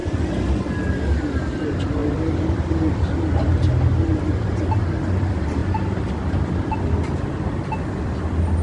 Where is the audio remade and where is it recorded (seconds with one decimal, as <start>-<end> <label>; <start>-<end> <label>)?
0.0-8.6 recorded

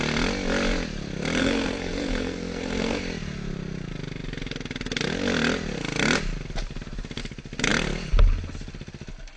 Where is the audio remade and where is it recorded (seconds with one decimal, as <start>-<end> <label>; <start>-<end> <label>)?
0.0-1.4 recorded; 1.4-3.0 remade; 3.0-9.4 recorded